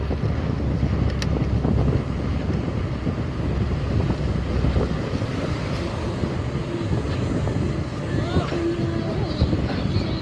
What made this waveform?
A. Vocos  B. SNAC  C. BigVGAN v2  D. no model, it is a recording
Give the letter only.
D